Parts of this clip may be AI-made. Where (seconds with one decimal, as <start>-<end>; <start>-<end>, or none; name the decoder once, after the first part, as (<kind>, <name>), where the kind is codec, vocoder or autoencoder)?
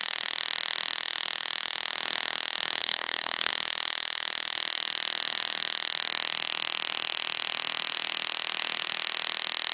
2.8-3.5 (codec, HILCodec)